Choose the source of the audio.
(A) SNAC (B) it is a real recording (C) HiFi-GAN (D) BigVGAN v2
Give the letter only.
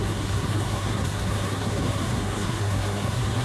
A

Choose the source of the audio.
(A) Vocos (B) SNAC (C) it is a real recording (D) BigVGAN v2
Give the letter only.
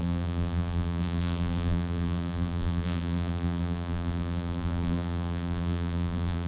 D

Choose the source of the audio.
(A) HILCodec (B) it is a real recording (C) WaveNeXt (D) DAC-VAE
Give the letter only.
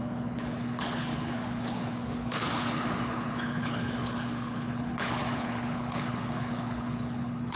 A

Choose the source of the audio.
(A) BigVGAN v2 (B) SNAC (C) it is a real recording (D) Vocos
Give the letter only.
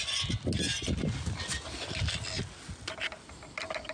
C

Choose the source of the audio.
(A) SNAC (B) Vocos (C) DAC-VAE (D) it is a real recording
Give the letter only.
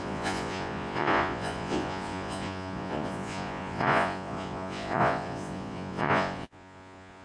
B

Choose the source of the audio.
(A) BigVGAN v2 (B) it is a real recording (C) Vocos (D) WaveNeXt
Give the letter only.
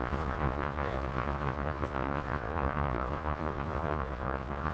C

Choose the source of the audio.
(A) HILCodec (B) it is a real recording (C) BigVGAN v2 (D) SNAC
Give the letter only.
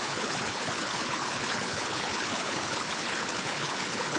A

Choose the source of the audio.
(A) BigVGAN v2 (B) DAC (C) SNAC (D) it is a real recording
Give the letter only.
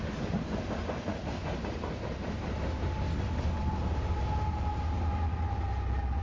D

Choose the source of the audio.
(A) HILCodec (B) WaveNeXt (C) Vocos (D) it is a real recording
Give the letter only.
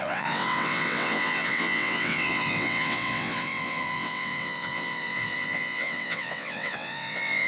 B